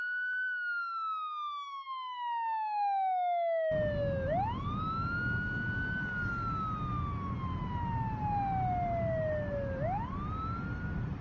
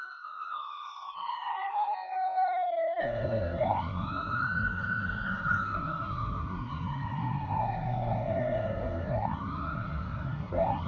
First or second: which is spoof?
second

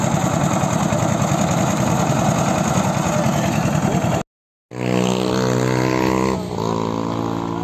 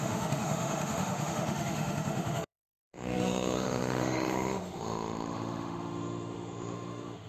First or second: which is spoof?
second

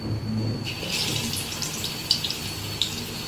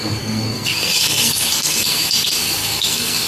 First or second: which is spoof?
second